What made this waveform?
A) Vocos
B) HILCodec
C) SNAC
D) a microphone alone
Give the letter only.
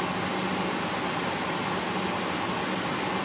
D